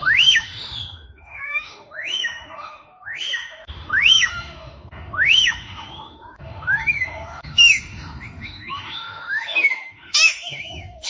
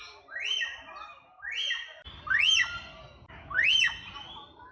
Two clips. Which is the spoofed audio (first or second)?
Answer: first